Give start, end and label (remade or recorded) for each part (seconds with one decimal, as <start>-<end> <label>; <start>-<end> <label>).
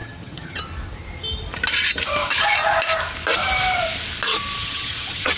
0.0-0.6 remade; 0.6-4.6 recorded; 4.6-5.4 remade